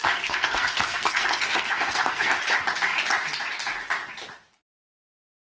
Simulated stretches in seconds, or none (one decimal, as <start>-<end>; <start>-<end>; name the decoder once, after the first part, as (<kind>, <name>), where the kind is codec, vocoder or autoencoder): 0.0-2.4 (codec, SNAC)